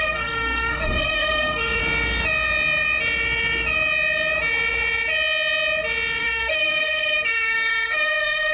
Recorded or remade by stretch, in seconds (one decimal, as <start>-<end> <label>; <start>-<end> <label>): 0.0-1.8 remade; 1.8-6.2 recorded; 6.2-8.5 remade